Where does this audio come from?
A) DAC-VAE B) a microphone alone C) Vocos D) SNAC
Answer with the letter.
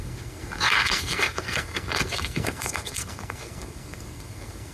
D